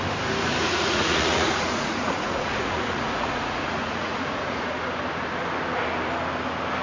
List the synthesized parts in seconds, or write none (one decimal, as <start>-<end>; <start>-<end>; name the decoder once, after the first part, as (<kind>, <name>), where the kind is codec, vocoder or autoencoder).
0.6-4.7 (vocoder, Vocos)